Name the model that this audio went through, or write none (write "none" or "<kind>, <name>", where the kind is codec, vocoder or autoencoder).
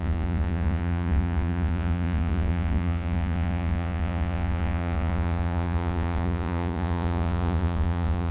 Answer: vocoder, Vocos